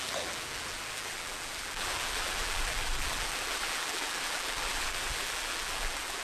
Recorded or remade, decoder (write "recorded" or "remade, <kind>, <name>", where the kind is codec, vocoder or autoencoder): remade, vocoder, BigVGAN v2